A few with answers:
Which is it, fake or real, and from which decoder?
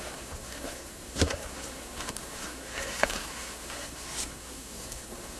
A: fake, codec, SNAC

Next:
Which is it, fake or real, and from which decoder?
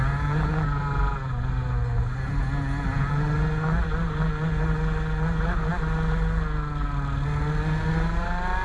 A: real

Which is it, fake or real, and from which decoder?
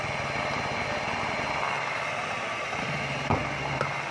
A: real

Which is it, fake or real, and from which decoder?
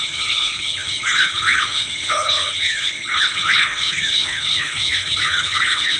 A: fake, codec, HILCodec